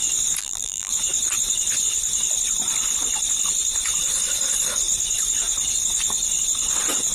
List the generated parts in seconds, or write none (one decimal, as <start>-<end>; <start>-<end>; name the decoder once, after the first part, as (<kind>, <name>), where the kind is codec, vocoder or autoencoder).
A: 0.4-0.9 (vocoder, BigVGAN v2)